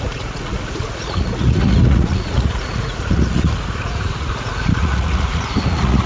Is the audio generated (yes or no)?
yes